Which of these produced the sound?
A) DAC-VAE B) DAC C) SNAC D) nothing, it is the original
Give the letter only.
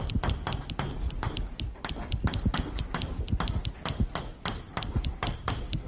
D